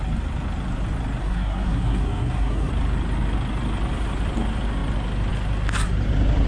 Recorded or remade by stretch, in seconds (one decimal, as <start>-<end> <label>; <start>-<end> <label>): 0.0-1.2 recorded; 1.2-2.7 remade; 2.7-6.5 recorded